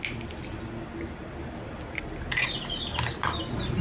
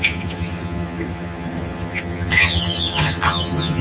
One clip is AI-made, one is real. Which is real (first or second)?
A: first